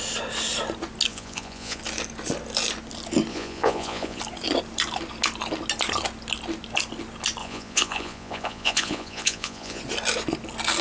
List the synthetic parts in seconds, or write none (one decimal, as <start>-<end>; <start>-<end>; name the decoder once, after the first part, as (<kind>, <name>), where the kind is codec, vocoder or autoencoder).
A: 1.1-1.8 (vocoder, Vocos); 3.3-4.2; 7.4-9.8